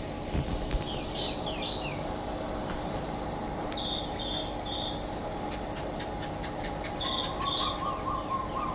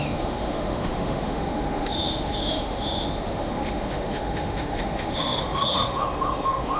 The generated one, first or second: second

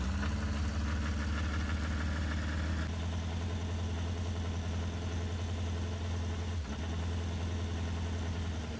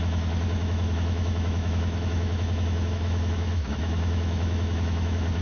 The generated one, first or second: second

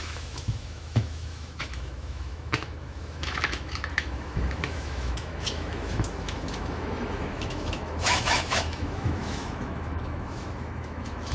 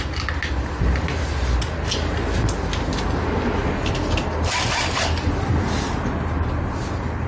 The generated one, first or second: first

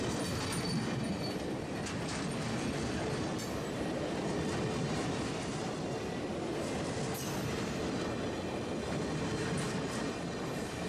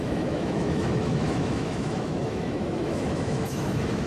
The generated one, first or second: second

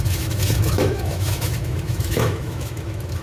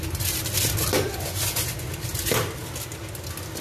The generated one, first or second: first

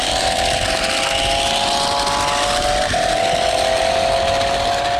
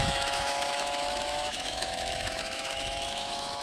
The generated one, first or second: second